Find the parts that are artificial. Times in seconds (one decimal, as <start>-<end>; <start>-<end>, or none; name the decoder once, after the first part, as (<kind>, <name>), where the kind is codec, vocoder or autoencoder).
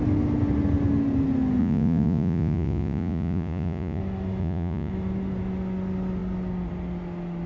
1.6-4.0 (vocoder, Vocos); 4.4-4.9